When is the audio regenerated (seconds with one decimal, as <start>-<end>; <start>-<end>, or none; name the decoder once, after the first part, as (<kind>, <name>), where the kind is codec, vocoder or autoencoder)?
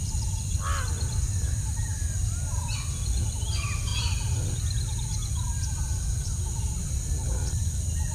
none